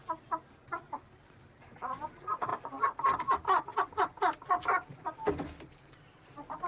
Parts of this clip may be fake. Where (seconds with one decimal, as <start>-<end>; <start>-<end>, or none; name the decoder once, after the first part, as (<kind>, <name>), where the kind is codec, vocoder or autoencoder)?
0.0-3.7 (vocoder, BigVGAN v2); 5.3-6.7